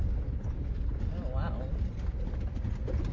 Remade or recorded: recorded